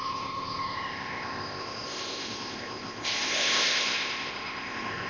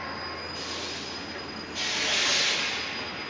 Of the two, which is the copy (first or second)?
first